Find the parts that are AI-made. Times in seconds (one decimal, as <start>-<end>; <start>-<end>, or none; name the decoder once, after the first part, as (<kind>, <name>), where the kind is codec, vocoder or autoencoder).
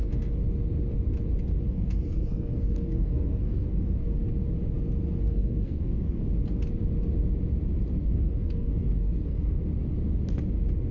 0.0-0.4 (codec, SNAC); 1.7-4.2; 5.2-6.2; 8.0-9.7